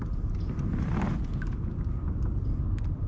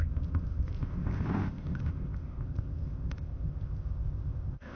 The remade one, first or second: second